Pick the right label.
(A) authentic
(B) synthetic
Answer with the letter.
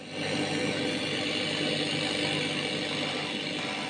A